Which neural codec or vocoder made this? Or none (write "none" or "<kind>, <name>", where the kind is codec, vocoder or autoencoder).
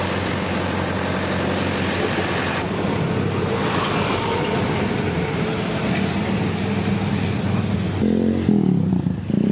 none